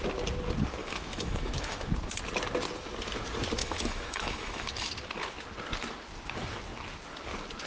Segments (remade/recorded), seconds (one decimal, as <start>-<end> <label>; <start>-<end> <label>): 0.0-0.8 recorded; 0.8-1.9 remade; 1.9-3.6 recorded; 3.6-4.9 remade; 4.9-7.7 recorded